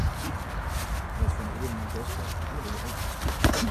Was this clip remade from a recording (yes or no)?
no